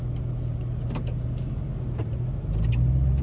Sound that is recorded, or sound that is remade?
recorded